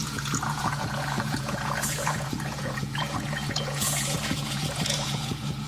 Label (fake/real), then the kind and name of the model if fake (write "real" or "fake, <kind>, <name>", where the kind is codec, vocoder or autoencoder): fake, vocoder, Vocos